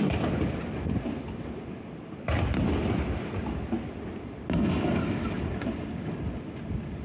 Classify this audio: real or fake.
real